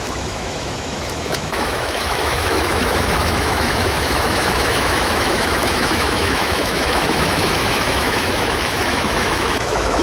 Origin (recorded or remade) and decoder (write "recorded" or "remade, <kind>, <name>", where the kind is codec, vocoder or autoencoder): remade, autoencoder, DAC-VAE